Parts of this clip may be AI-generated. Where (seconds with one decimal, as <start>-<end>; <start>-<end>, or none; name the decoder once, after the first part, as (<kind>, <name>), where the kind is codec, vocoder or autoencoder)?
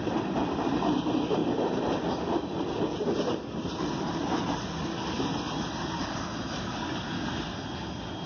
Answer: 0.0-1.4 (vocoder, BigVGAN v2); 2.0-3.0; 3.5-8.3